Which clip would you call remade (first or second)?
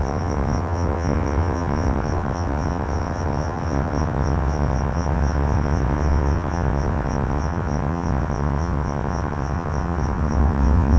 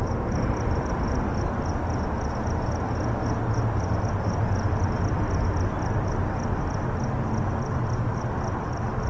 first